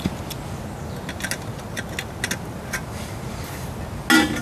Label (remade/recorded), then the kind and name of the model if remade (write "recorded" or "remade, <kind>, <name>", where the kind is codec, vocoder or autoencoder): recorded